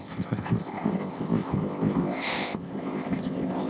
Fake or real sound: fake